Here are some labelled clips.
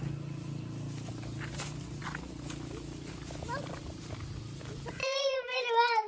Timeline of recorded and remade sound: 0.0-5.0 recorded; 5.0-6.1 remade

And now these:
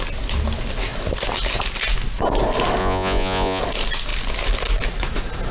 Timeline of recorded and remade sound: 0.0-2.8 recorded; 2.8-3.6 remade; 3.6-5.5 recorded

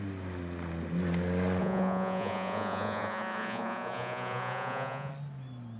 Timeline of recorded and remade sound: 0.0-1.6 recorded; 1.6-5.1 remade; 5.1-5.8 recorded

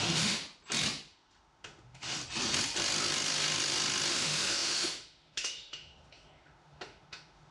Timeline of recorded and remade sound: 0.0-0.4 remade; 0.4-1.1 recorded; 1.1-2.2 remade; 2.2-4.1 recorded; 4.1-7.5 remade

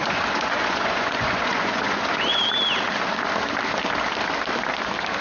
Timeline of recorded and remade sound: 0.0-2.4 remade; 2.4-5.2 recorded

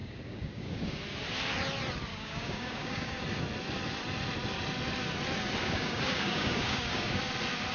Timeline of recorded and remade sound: 0.0-1.0 remade; 1.0-2.1 recorded; 2.1-3.2 remade; 3.2-5.6 recorded; 5.6-7.2 remade; 7.2-7.7 recorded